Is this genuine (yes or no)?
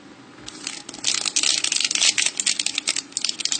yes